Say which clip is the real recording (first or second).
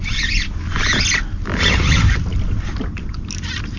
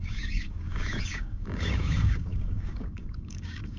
first